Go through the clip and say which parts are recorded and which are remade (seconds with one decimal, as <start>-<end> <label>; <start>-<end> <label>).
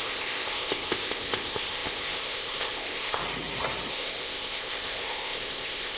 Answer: 0.0-3.2 remade; 3.2-3.9 recorded; 3.9-6.0 remade